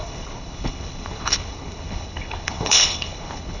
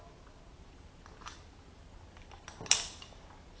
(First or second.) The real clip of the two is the second